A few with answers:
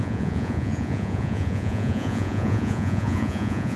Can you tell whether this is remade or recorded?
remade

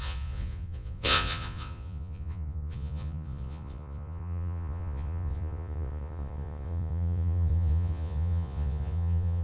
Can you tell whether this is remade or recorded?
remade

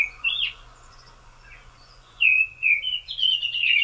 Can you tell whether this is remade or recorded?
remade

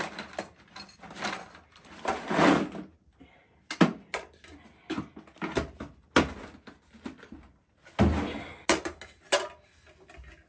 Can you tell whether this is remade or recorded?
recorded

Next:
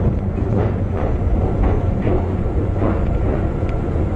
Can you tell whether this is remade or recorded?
remade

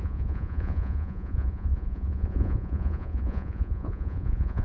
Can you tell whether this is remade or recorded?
remade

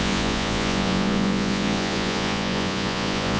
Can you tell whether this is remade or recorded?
remade